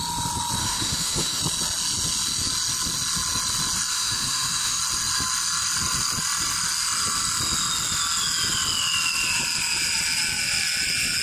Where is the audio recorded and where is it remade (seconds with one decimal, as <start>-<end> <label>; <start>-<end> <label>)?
0.0-0.6 recorded; 0.6-1.4 remade; 1.4-3.9 recorded; 3.9-4.8 remade; 4.8-11.2 recorded